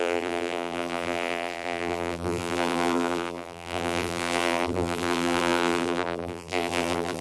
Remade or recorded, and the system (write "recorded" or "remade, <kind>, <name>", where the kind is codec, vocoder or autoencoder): remade, vocoder, BigVGAN v2